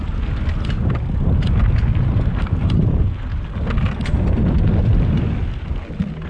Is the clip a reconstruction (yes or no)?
no